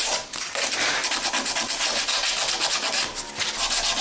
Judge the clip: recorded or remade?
recorded